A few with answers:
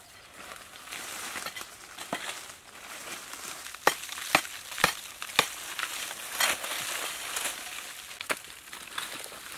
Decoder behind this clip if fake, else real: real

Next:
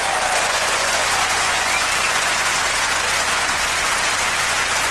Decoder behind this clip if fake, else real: fake, vocoder, Vocos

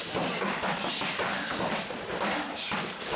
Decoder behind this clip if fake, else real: fake, vocoder, BigVGAN v2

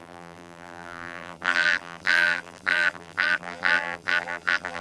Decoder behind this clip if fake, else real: fake, vocoder, BigVGAN v2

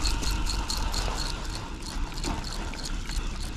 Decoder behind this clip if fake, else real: real